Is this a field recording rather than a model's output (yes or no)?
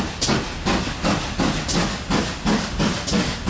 yes